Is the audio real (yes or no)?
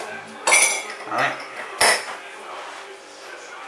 yes